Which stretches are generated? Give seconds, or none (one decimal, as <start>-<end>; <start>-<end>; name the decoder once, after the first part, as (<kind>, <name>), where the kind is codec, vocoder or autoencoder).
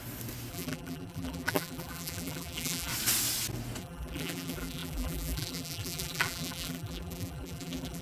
0.5-2.9 (vocoder, BigVGAN v2); 3.8-8.0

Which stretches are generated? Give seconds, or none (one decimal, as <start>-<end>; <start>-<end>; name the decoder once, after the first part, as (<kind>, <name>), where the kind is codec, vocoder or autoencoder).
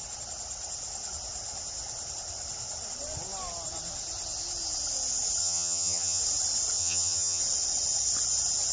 5.4-6.2 (vocoder, HiFi-GAN); 6.8-7.4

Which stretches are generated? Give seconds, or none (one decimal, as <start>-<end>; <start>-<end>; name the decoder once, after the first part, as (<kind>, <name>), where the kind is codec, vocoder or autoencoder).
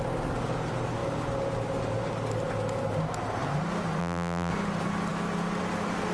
4.0-4.5 (vocoder, BigVGAN v2)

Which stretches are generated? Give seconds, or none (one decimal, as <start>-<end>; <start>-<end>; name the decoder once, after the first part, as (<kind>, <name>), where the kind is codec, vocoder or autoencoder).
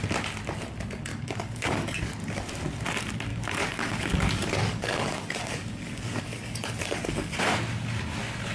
1.1-2.5 (codec, DAC); 3.3-7.3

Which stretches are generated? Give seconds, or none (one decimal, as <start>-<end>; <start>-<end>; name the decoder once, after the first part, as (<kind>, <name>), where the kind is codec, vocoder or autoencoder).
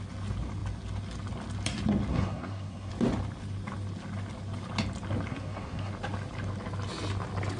2.1-2.9 (codec, SNAC); 5.3-5.9